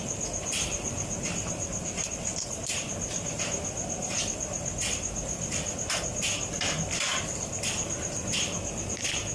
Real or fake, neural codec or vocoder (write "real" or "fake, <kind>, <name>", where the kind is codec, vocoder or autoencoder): real